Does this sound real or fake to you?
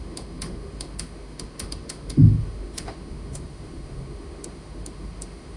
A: fake